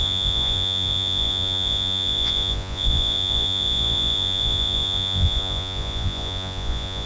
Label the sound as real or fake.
fake